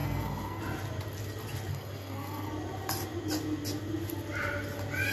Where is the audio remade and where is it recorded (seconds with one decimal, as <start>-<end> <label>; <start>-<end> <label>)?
0.0-0.6 remade; 0.6-1.7 recorded; 1.7-2.5 remade; 2.5-5.1 recorded